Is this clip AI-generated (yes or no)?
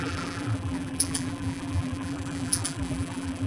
yes